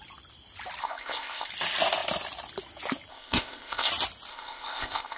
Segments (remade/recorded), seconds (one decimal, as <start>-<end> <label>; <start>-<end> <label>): 0.0-0.8 recorded; 0.8-1.5 remade; 1.5-3.1 recorded; 3.1-3.9 remade; 3.9-4.3 recorded; 4.3-5.2 remade